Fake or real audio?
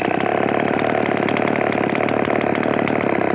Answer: real